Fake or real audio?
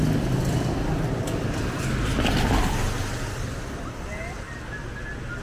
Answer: real